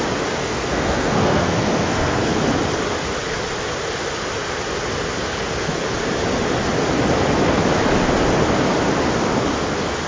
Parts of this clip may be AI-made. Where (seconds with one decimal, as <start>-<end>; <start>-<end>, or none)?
0.4-2.4